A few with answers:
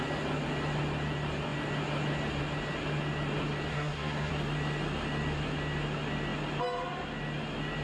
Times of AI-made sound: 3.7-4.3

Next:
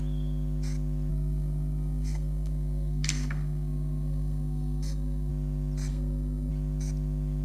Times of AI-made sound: 1.1-5.3; 5.9-6.5

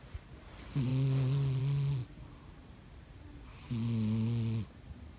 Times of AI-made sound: none

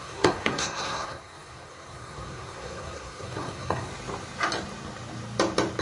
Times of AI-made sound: 0.0-3.9

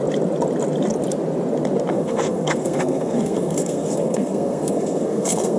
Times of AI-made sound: 1.9-5.6